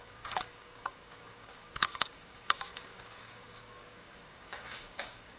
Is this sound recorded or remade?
remade